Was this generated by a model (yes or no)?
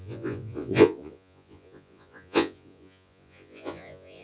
yes